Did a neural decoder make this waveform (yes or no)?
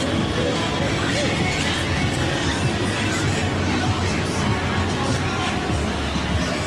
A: no